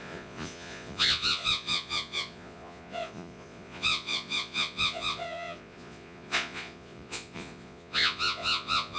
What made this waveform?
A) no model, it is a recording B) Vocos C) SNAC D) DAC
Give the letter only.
B